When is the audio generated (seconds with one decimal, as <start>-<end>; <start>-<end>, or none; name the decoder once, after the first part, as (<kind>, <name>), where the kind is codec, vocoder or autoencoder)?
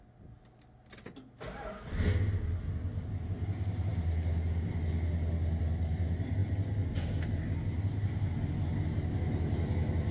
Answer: none